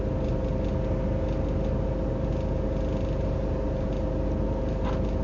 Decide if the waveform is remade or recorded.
recorded